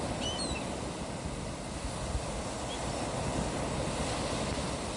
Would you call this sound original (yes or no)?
yes